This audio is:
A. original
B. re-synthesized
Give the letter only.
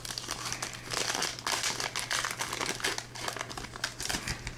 A